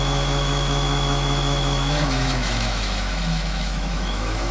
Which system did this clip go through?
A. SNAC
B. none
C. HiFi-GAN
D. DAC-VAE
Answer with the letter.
D